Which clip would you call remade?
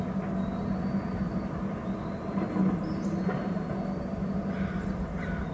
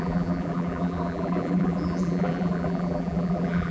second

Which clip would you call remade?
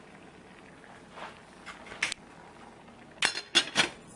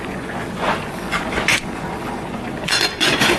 second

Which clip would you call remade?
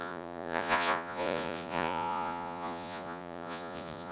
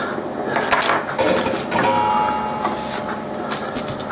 first